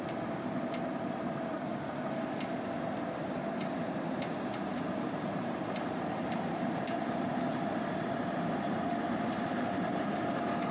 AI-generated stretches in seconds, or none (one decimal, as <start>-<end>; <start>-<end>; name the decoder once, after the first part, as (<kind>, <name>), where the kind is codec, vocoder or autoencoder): 0.0-1.7 (vocoder, BigVGAN v2); 4.9-10.7